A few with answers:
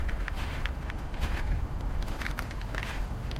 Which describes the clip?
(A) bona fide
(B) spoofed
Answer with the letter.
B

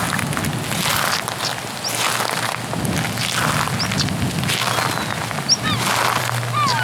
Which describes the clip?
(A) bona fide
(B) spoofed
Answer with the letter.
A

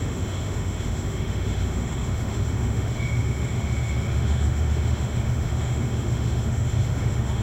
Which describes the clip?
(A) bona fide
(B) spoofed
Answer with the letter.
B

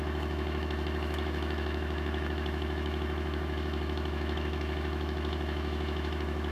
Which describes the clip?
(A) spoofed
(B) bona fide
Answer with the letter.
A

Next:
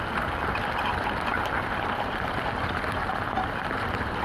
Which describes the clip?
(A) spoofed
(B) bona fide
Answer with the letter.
B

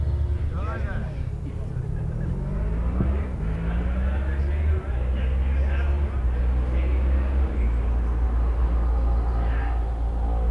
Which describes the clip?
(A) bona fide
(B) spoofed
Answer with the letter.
A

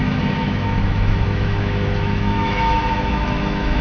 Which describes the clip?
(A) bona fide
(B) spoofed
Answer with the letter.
B